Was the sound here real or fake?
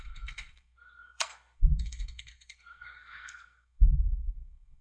fake